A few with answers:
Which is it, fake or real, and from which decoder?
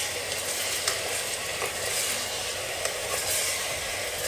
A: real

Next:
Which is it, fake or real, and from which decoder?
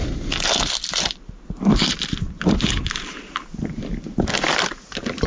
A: real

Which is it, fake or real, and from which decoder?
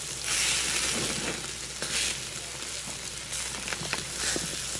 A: real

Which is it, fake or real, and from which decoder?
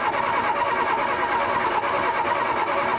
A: real